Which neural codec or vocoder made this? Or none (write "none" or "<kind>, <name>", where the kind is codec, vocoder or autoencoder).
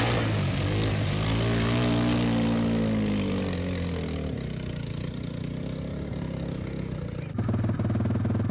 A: none